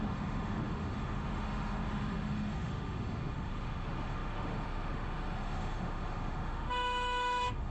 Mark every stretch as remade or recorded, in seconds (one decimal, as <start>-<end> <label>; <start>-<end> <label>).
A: 0.0-7.7 remade